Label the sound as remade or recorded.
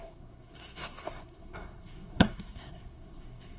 remade